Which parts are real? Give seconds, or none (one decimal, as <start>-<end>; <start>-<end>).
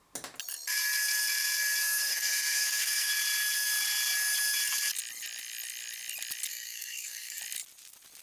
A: 0.0-1.8; 3.1-6.5; 7.4-8.2